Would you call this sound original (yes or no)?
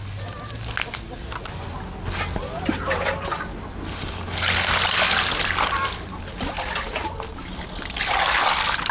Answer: yes